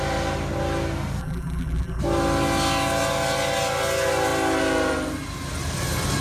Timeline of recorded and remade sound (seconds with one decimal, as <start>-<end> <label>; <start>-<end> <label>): 0.0-1.2 recorded; 1.2-2.0 remade; 2.0-6.2 recorded